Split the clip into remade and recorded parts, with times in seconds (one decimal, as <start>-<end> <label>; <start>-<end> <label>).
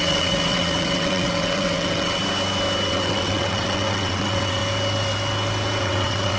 0.0-2.2 remade; 2.2-2.9 recorded; 2.9-4.6 remade; 4.6-5.8 recorded; 5.8-6.4 remade